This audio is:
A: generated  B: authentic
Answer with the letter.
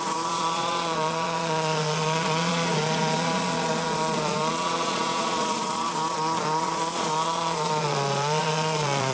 A